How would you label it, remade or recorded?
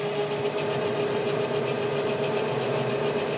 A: recorded